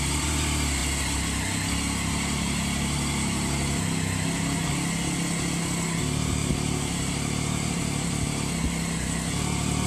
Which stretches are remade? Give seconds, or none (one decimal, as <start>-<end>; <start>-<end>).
6.4-7.4